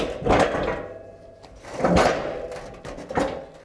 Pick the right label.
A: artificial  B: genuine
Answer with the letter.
B